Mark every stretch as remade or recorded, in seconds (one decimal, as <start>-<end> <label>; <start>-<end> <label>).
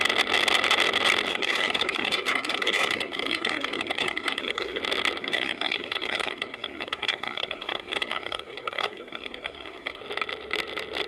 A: 0.0-1.3 recorded; 1.3-4.8 remade; 4.8-5.2 recorded; 5.2-10.0 remade; 10.0-11.1 recorded